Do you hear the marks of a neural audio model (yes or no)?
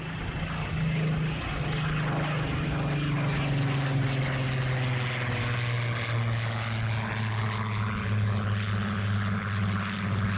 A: no